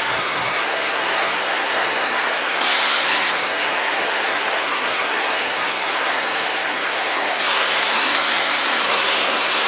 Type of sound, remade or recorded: remade